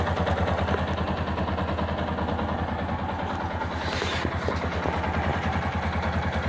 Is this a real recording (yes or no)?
yes